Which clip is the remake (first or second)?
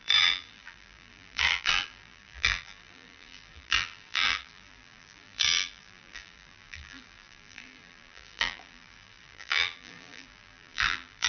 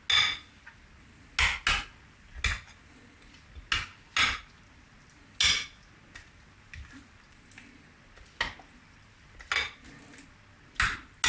first